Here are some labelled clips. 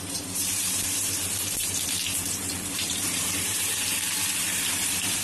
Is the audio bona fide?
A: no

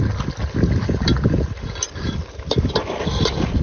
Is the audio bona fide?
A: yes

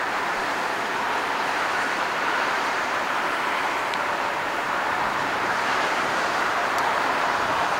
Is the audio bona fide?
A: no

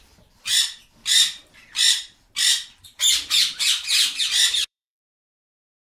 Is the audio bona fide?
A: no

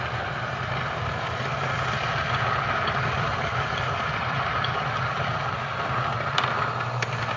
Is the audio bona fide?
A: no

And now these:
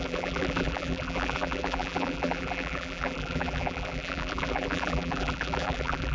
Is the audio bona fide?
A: no